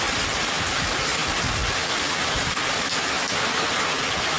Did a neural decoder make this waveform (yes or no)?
no